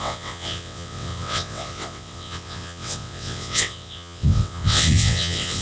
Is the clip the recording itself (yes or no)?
no